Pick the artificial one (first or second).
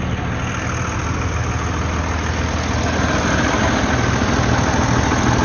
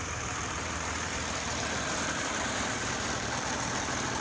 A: second